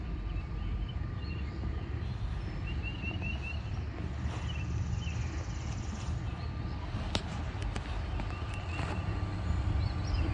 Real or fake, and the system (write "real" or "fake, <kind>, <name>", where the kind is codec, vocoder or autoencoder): real